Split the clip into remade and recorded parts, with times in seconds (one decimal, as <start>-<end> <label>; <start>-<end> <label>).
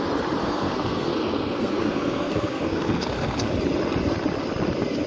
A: 0.0-0.4 recorded; 0.4-3.5 remade; 3.5-5.1 recorded